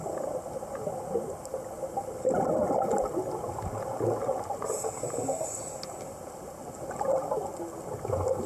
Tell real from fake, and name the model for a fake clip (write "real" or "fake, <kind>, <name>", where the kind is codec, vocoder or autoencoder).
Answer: real